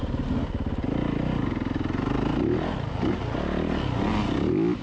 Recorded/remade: recorded